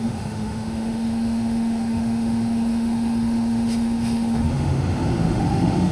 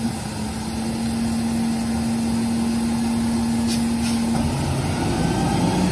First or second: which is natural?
second